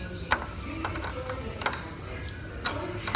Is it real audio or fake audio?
real